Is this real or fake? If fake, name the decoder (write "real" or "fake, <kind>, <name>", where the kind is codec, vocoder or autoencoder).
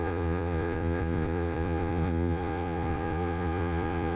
fake, vocoder, Vocos